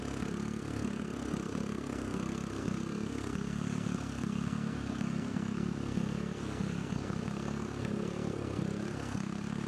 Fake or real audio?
fake